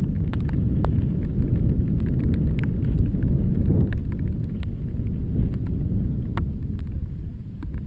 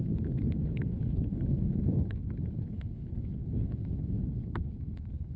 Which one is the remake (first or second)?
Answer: second